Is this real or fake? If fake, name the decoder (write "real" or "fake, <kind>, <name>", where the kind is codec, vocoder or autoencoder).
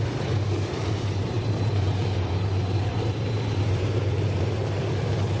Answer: fake, vocoder, BigVGAN v2